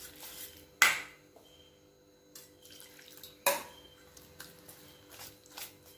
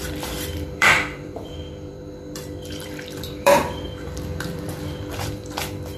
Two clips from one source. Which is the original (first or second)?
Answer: first